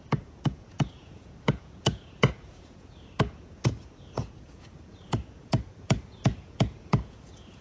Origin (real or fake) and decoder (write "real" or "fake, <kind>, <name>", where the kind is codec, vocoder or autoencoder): fake, vocoder, Vocos